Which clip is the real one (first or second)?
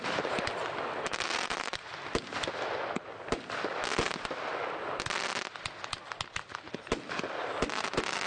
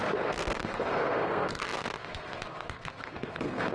first